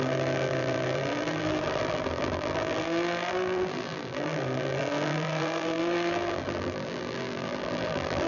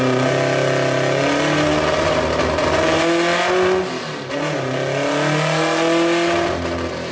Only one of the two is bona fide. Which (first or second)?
second